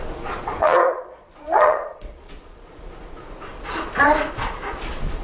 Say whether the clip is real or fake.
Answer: fake